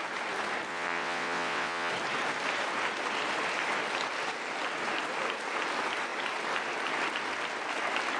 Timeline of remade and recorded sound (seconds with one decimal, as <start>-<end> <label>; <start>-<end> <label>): 0.0-0.7 recorded; 0.7-1.9 remade; 1.9-8.2 recorded